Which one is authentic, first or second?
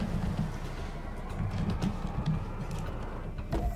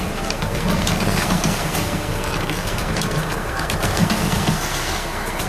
first